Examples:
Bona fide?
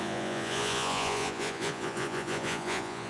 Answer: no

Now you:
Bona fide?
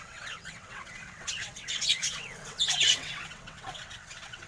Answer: no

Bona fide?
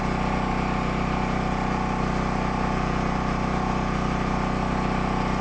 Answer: yes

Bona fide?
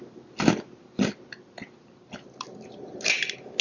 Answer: yes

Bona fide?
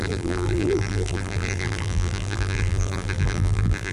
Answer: no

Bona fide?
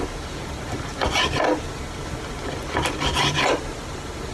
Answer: yes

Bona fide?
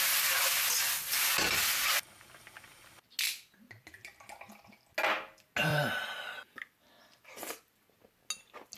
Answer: yes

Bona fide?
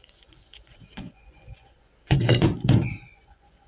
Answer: no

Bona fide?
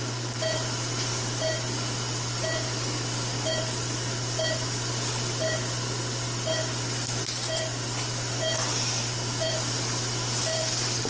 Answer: yes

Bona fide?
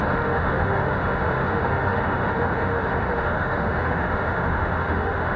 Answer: no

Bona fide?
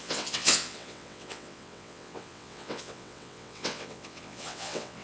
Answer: no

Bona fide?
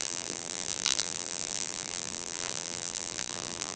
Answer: no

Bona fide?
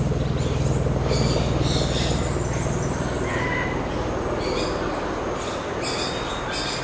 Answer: yes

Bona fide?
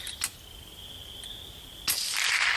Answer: yes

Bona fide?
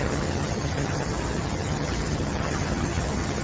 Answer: no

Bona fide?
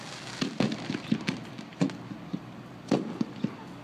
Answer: yes